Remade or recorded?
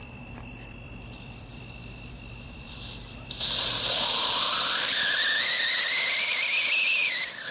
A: remade